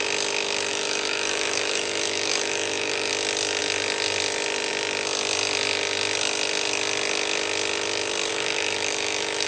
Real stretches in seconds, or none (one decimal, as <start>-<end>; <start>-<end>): 0.0-0.7; 3.1-8.3